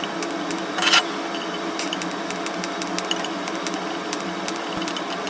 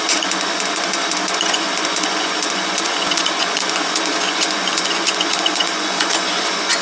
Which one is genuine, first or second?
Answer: first